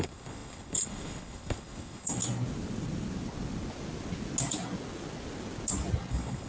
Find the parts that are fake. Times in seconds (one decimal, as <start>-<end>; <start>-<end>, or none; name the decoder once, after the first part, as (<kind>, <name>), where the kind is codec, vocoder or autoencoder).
0.0-2.2 (codec, HILCodec); 6.1-6.5